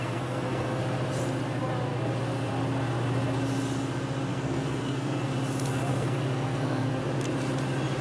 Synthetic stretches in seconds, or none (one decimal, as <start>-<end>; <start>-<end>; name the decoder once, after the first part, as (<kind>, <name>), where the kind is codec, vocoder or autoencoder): 0.0-0.8 (codec, SNAC); 4.3-5.3; 5.9-7.0